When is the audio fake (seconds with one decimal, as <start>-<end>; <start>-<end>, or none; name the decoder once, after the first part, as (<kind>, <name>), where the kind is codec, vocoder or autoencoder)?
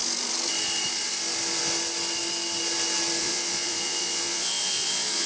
3.2-5.3 (vocoder, Vocos)